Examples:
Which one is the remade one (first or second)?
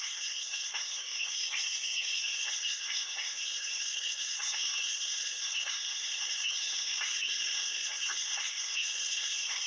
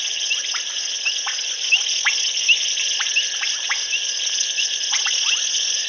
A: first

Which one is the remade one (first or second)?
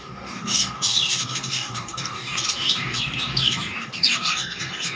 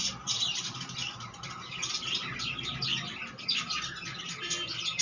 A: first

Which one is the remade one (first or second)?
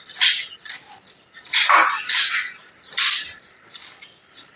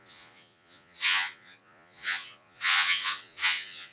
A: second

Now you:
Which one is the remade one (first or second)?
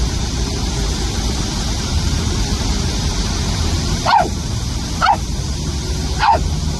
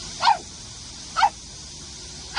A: first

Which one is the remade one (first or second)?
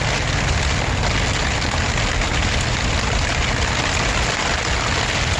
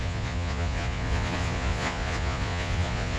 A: second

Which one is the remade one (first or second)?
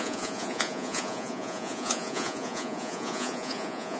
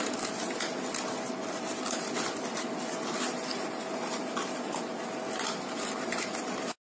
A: first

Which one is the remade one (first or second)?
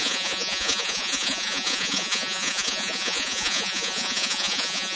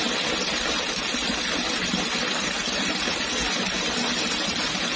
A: first